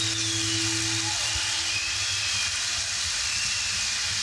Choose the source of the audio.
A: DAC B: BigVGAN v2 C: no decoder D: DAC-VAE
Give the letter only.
C